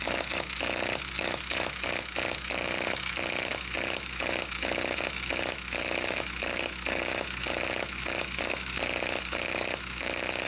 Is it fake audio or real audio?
fake